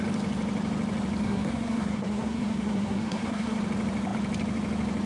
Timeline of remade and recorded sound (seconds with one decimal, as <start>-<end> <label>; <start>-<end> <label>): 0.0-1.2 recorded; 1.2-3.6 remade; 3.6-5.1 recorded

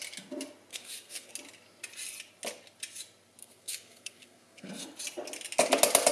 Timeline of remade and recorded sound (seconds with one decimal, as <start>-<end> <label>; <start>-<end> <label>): 0.0-0.7 recorded; 0.7-1.3 remade; 1.3-3.4 recorded; 3.4-4.7 remade; 4.7-6.1 recorded

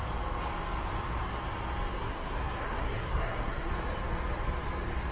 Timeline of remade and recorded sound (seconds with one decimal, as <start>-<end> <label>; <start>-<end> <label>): 0.0-1.9 recorded; 1.9-3.7 remade; 3.7-5.1 recorded